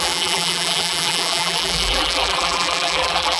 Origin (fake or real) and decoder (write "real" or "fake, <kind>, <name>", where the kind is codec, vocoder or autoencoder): fake, vocoder, BigVGAN v2